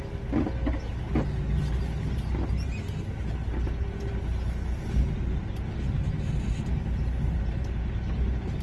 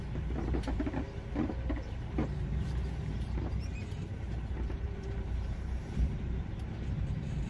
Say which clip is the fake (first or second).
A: second